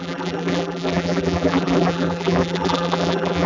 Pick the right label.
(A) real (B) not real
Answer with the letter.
B